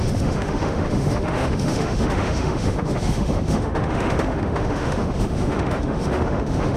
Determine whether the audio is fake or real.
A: fake